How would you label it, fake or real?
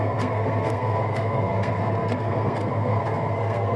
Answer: fake